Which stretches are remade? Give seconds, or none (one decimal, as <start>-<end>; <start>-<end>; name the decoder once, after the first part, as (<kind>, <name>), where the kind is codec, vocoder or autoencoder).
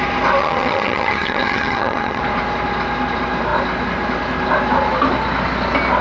0.4-2.2 (vocoder, HiFi-GAN)